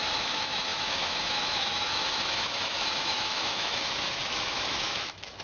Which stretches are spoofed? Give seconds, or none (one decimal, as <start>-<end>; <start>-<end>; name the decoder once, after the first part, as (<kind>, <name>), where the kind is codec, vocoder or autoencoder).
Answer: 0.0-5.4 (autoencoder, DAC-VAE)